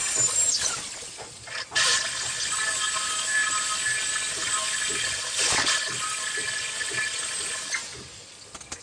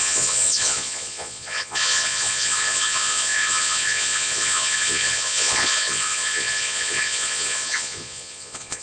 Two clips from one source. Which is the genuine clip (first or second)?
first